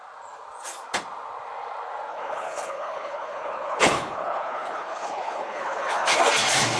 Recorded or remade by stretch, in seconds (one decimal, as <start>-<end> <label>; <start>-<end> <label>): 0.0-2.1 recorded; 2.1-6.2 remade; 6.2-6.8 recorded